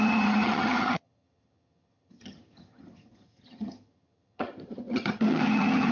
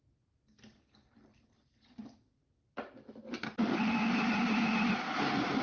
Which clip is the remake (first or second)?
first